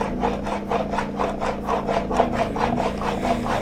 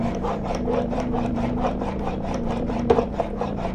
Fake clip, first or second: second